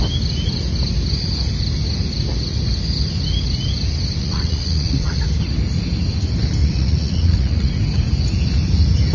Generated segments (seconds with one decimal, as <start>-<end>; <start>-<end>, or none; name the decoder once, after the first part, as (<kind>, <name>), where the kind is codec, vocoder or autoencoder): 4.2-5.2 (vocoder, Vocos); 6.6-7.7